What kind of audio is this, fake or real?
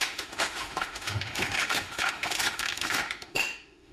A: fake